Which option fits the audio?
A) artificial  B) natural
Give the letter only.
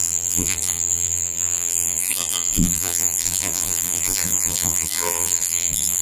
A